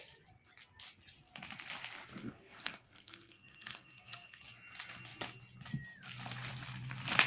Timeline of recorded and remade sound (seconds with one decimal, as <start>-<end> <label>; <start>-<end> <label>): 0.0-2.2 recorded; 2.2-4.4 remade; 4.4-7.3 recorded